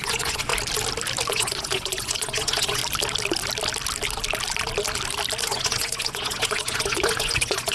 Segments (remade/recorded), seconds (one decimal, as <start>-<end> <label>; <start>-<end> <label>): 0.0-0.5 remade; 0.5-1.3 recorded; 1.3-2.8 remade; 2.8-5.4 recorded; 5.4-7.7 remade